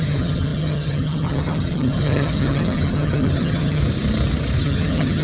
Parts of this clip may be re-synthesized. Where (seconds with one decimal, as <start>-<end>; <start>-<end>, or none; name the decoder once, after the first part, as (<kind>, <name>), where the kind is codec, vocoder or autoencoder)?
0.0-3.8 (vocoder, HiFi-GAN); 4.6-5.2